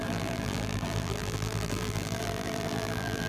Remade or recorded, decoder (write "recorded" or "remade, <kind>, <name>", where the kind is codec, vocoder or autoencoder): remade, vocoder, BigVGAN v2